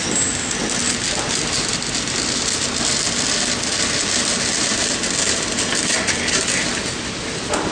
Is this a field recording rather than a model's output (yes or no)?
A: yes